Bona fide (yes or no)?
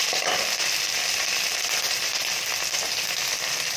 yes